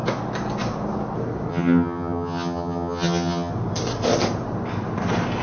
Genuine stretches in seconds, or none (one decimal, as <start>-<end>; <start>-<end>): 0.0-1.5; 3.5-5.4